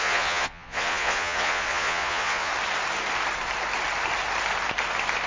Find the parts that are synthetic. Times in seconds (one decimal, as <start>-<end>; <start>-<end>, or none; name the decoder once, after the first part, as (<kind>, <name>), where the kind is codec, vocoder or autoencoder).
0.0-2.5 (vocoder, Vocos)